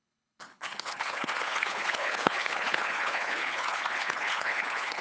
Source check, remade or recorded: remade